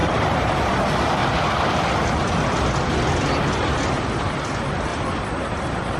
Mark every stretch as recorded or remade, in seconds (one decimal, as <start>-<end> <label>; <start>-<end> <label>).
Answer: 0.0-6.0 recorded